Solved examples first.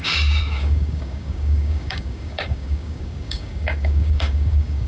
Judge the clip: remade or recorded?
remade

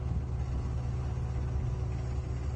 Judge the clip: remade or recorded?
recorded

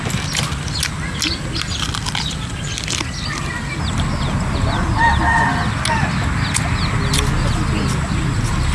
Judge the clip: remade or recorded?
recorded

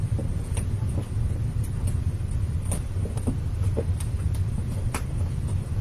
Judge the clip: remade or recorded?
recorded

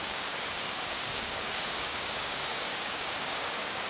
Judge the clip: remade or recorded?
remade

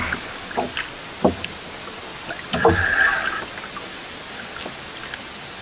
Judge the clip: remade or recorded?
recorded